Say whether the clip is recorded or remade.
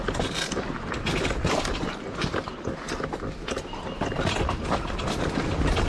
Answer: recorded